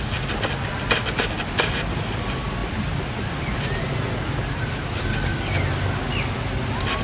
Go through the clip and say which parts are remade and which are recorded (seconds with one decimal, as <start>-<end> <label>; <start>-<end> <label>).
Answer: 0.0-2.6 recorded; 2.6-3.8 remade; 3.8-7.0 recorded